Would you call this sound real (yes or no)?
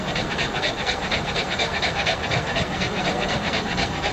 no